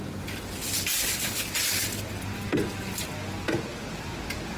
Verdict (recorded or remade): recorded